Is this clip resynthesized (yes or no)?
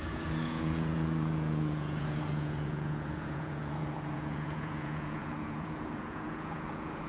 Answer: yes